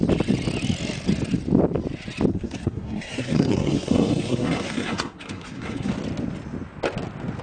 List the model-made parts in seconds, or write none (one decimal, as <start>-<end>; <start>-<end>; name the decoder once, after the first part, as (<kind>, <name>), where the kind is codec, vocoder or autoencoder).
2.3-5.9 (codec, SNAC)

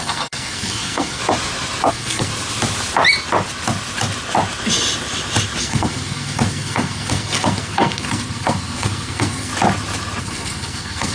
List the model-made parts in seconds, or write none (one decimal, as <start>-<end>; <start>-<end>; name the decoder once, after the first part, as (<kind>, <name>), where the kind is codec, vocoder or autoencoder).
0.0-1.2 (codec, SNAC); 1.9-2.3; 5.6-9.5; 10.2-11.1

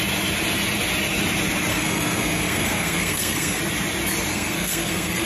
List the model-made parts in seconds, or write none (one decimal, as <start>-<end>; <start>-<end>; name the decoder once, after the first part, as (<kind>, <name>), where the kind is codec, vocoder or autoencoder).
1.7-3.6 (codec, SNAC); 4.3-5.3

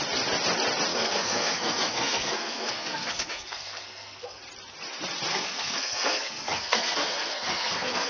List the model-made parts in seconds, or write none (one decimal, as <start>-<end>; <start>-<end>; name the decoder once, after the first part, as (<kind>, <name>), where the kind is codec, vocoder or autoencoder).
0.9-4.4 (codec, SNAC); 5.3-8.1